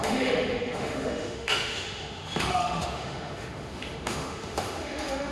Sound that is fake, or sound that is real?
fake